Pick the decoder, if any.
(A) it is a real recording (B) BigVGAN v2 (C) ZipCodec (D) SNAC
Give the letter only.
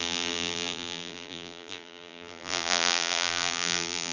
B